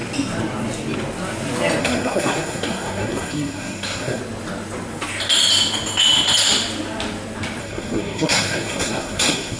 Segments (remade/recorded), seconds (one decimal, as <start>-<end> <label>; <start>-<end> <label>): 0.0-1.8 recorded; 1.8-4.2 remade; 4.2-7.6 recorded; 7.6-9.6 remade